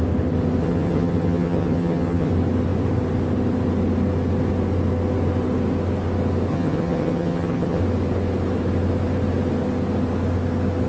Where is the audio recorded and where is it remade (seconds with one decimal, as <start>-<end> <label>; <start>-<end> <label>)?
0.0-0.6 recorded; 0.6-2.3 remade; 2.3-6.5 recorded; 6.5-7.8 remade; 7.8-10.9 recorded

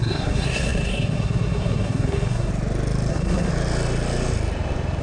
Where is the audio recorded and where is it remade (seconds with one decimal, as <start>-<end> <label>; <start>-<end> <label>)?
0.0-2.5 remade; 2.5-3.1 recorded; 3.1-3.5 remade; 3.5-5.0 recorded

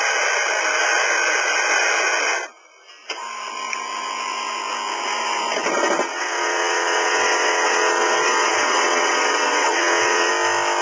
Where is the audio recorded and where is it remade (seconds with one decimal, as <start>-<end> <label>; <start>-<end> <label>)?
0.0-6.1 recorded; 6.1-10.3 remade; 10.3-10.8 recorded

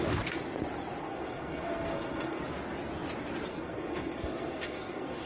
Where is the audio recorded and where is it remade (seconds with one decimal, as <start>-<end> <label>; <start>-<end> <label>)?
0.0-1.0 recorded; 1.0-2.4 remade; 2.4-3.5 recorded; 3.5-5.3 remade

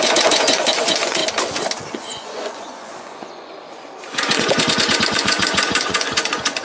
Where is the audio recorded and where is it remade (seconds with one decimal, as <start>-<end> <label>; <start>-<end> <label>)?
0.0-1.2 remade; 1.2-1.9 recorded; 1.9-3.5 remade; 3.5-4.1 recorded; 4.1-6.6 remade

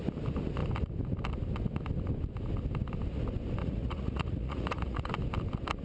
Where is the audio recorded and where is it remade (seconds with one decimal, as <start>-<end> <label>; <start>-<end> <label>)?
0.0-3.6 recorded; 3.6-5.1 remade; 5.1-5.8 recorded